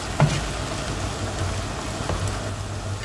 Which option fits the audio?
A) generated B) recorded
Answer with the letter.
B